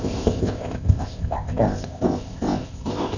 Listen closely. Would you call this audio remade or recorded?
remade